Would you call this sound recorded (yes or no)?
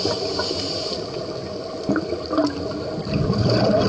yes